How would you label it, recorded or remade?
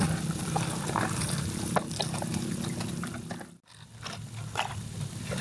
recorded